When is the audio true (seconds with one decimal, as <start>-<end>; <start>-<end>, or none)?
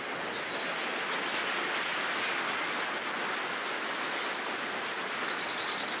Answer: 0.0-6.0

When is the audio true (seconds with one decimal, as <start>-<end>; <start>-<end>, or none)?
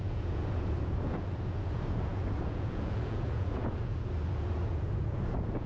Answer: none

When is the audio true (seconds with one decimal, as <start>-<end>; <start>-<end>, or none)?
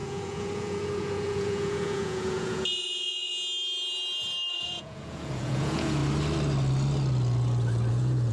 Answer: 3.3-4.5; 6.0-7.9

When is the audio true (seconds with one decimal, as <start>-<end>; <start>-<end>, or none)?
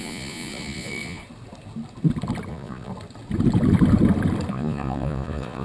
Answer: 1.2-2.5; 2.9-4.5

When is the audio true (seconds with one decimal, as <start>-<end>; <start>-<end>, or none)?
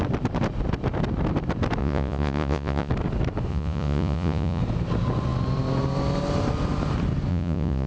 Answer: 0.0-1.8; 2.9-3.5; 4.6-7.3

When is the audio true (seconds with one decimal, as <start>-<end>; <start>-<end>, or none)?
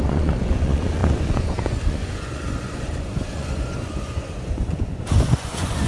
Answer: none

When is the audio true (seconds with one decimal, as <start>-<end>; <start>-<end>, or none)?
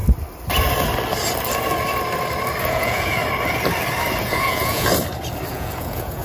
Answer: 0.0-2.6; 3.2-4.2; 4.9-5.5